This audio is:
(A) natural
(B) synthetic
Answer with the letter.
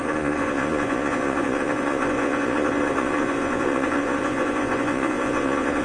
B